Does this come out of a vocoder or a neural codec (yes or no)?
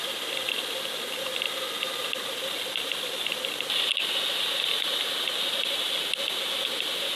no